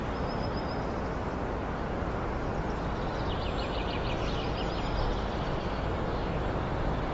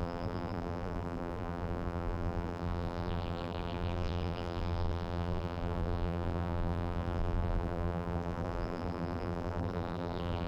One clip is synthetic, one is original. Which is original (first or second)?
first